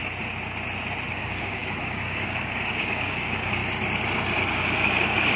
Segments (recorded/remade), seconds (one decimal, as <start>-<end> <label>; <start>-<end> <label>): 0.0-1.1 recorded; 1.1-3.6 remade; 3.6-4.5 recorded; 4.5-5.4 remade